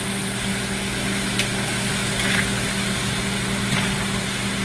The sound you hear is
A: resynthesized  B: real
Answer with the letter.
B